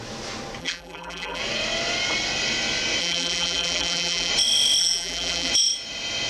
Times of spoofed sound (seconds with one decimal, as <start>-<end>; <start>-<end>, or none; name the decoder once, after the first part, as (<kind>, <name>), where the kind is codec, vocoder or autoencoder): 0.6-1.4 (vocoder, BigVGAN v2); 3.0-4.3; 4.8-5.5